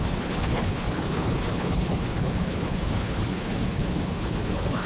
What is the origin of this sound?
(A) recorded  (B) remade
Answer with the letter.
B